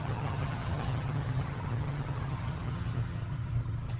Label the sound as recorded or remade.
remade